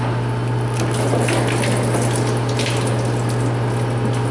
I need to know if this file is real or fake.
real